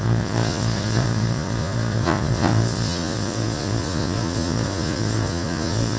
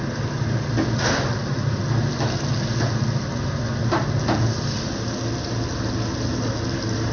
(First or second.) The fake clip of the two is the first